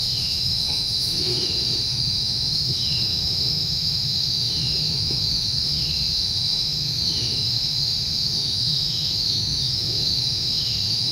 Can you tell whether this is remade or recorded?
remade